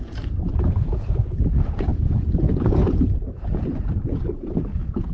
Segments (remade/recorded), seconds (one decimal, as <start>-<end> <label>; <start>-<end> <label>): 0.0-5.1 remade